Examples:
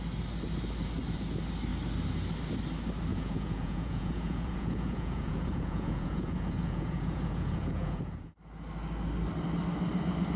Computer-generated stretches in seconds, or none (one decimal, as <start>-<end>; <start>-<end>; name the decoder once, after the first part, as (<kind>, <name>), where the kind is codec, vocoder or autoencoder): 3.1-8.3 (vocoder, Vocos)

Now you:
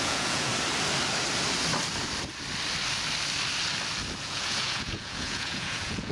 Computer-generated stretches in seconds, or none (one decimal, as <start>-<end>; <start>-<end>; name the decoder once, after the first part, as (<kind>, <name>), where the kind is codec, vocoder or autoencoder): 0.0-0.5 (vocoder, Vocos); 4.2-6.1

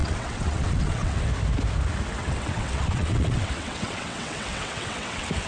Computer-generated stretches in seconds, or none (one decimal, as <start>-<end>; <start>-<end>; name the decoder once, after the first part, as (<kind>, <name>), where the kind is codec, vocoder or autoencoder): 0.0-1.3 (vocoder, WaveNeXt); 2.2-5.5

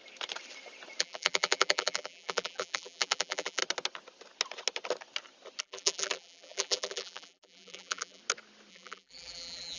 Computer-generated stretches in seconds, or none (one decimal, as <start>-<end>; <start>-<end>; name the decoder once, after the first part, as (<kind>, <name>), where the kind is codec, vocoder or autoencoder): 1.0-3.6 (vocoder, BigVGAN v2); 5.6-8.2; 8.7-9.8

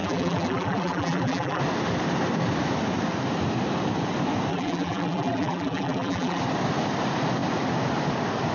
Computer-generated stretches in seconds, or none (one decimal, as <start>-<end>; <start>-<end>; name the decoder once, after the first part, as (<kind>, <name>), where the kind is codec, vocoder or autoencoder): 0.0-1.6 (vocoder, BigVGAN v2); 4.5-6.4